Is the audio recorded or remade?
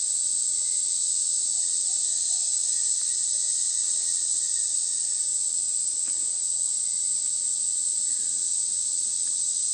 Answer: remade